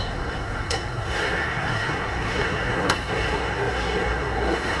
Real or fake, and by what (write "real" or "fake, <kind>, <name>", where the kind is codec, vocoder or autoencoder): fake, codec, SNAC